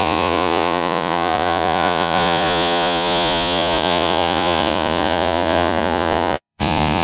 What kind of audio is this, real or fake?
fake